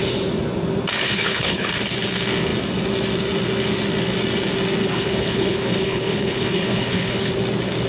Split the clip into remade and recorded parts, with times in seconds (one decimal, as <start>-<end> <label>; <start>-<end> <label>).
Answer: 0.0-1.0 recorded; 1.0-1.7 remade; 1.7-4.8 recorded; 4.8-7.3 remade; 7.3-7.9 recorded